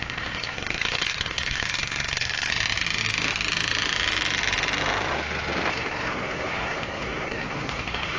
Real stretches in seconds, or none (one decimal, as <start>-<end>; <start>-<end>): 2.5-5.7